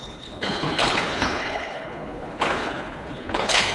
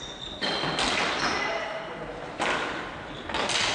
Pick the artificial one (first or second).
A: first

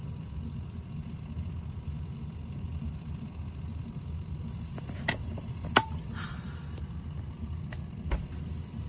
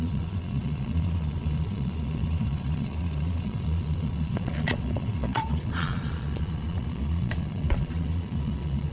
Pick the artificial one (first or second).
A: second